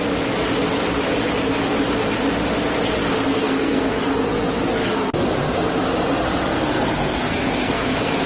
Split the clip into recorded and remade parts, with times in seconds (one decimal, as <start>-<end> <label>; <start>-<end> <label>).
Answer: 0.0-3.4 recorded; 3.4-4.0 remade; 4.0-6.5 recorded; 6.5-8.3 remade